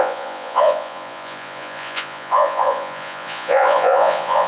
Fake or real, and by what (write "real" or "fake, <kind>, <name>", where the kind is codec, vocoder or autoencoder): fake, vocoder, Vocos